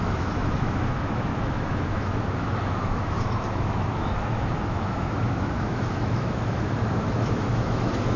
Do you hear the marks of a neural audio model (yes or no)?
yes